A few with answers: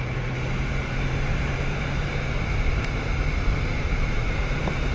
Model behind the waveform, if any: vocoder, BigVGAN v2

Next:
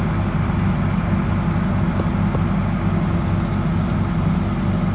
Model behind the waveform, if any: none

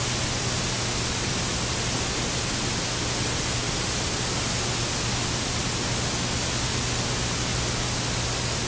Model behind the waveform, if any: none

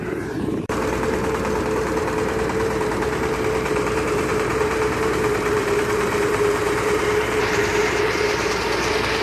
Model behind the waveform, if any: vocoder, BigVGAN v2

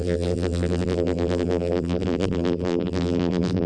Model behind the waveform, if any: vocoder, BigVGAN v2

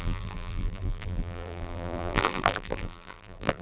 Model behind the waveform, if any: vocoder, BigVGAN v2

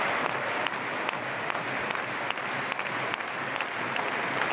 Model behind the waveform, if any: none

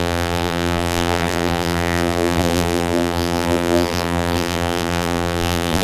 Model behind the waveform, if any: vocoder, BigVGAN v2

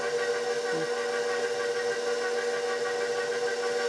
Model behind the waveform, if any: none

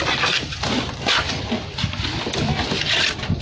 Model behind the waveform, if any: none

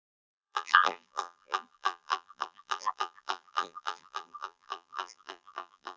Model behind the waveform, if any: vocoder, BigVGAN v2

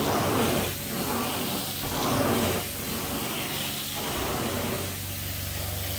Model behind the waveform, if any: none